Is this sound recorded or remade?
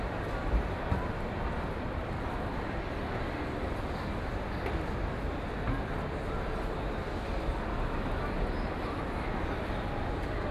recorded